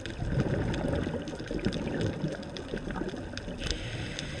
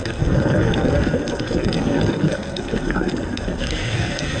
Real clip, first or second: first